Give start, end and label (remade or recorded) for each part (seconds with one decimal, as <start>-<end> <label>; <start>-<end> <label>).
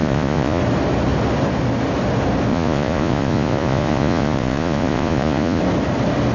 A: 0.0-0.6 remade; 0.6-2.5 recorded; 2.5-5.6 remade; 5.6-6.3 recorded